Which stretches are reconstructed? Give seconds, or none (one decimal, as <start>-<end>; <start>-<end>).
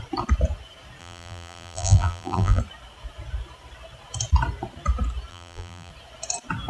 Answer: 1.0-2.6; 5.3-5.9